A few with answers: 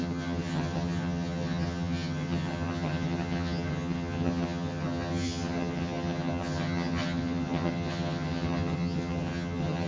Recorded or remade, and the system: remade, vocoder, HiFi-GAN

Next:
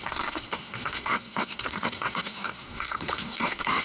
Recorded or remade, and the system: remade, codec, SNAC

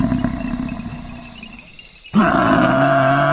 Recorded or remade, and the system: recorded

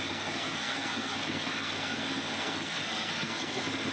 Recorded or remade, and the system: remade, codec, SNAC